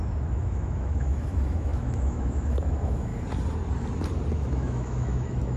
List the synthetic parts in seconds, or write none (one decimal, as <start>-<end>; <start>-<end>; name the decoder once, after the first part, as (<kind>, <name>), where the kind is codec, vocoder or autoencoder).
0.0-3.1 (autoencoder, DAC-VAE); 4.3-5.6